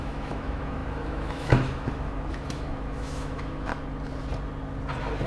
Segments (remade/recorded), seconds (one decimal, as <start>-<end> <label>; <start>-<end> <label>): 0.0-3.7 remade; 3.7-5.3 recorded